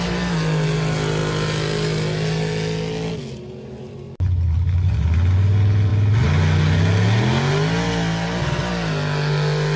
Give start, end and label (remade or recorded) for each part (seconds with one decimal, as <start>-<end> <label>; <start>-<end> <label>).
0.0-9.8 recorded

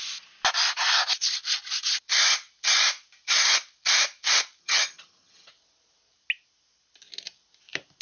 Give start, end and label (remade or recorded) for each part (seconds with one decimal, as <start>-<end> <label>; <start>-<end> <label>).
0.0-4.6 recorded; 4.6-5.5 remade; 5.5-8.0 recorded

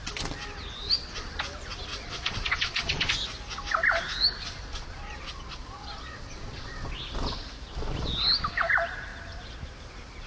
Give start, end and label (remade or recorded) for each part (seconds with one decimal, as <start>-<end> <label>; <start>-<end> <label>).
0.0-1.9 recorded; 1.9-3.1 remade; 3.1-4.7 recorded; 4.7-6.9 remade; 6.9-10.3 recorded

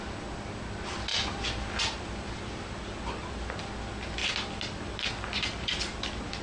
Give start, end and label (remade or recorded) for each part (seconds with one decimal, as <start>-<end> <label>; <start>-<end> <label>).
0.0-6.4 recorded